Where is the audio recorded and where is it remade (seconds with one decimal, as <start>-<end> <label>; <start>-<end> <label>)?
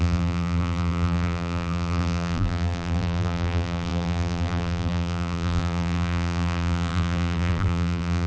0.0-8.3 remade